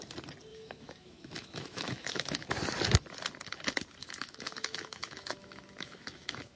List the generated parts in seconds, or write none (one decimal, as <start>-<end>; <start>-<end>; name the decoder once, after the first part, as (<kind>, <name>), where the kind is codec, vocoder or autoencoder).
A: 0.5-2.5 (autoencoder, DAC-VAE); 4.0-6.6

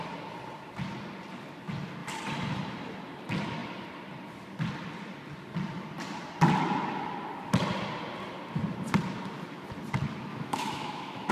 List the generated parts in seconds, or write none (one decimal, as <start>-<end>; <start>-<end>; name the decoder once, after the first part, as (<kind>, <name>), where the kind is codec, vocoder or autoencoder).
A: 10.3-11.3 (autoencoder, DAC-VAE)

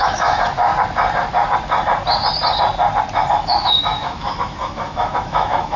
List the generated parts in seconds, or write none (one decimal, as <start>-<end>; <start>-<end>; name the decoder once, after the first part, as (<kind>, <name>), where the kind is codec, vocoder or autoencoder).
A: 0.0-0.7 (autoencoder, DAC-VAE); 3.3-5.8

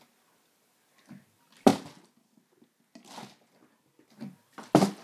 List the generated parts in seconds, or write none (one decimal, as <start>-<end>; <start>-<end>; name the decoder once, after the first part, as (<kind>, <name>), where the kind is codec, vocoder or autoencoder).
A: none

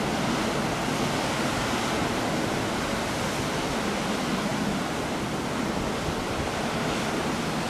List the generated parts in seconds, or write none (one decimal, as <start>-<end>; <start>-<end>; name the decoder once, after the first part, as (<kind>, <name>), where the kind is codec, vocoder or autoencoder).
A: none

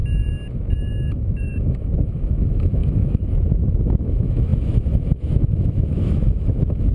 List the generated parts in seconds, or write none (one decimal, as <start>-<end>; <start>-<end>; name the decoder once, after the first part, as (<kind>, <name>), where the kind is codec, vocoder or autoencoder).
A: 0.7-6.9 (autoencoder, DAC-VAE)

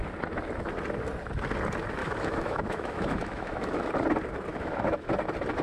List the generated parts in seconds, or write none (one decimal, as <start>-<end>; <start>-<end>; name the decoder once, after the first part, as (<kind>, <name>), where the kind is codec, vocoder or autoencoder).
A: 2.0-3.9 (autoencoder, DAC-VAE); 4.5-5.1

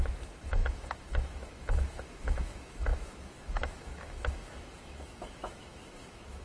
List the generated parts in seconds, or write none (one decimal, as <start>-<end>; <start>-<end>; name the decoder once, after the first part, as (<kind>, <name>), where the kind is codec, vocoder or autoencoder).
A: 0.0-6.4 (autoencoder, DAC-VAE)